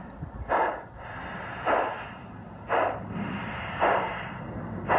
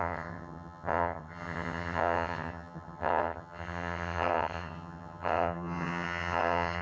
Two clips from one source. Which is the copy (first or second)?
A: second